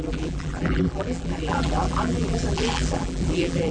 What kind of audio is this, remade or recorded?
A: remade